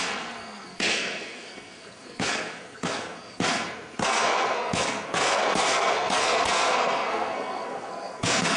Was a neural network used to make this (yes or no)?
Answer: yes